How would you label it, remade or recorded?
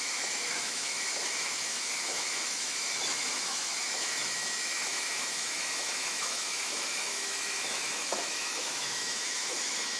remade